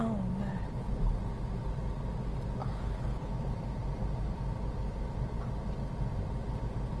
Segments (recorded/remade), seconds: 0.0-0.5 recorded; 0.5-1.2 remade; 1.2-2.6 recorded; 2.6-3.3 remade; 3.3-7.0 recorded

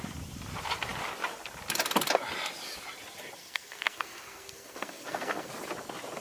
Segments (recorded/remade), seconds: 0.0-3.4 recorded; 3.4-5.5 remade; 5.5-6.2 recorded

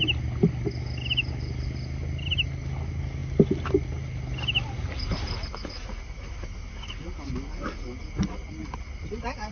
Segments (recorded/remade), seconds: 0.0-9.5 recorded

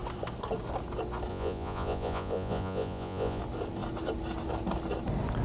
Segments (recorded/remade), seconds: 0.0-1.3 recorded; 1.3-3.4 remade; 3.4-5.4 recorded